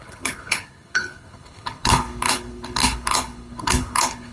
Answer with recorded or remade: remade